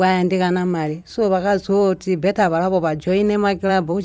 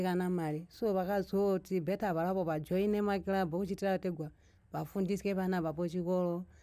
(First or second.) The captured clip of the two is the second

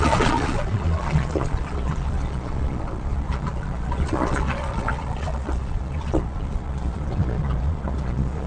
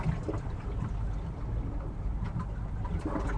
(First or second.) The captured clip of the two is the second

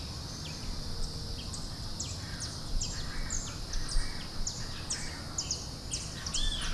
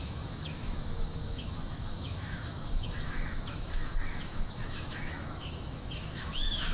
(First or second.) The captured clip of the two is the first